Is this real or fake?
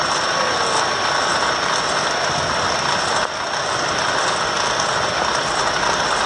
real